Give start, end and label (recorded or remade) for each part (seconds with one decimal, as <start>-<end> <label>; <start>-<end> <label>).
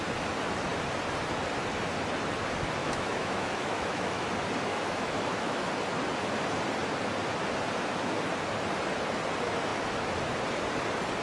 0.0-2.8 recorded; 2.8-4.3 remade; 4.3-4.7 recorded; 4.7-5.7 remade; 5.7-11.2 recorded